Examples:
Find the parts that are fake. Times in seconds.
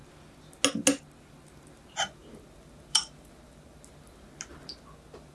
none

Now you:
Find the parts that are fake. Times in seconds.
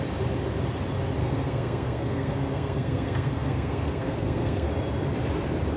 1.2-4.7 (codec, SNAC)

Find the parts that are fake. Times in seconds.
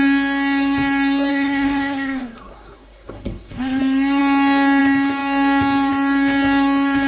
1.3-3.8 (codec, SNAC)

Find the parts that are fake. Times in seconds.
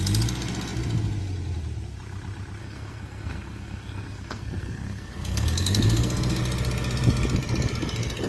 2.6-6.4 (codec, SNAC)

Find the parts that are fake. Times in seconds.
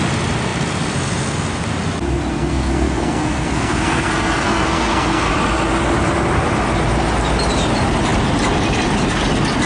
2.3-5.3 (codec, SNAC)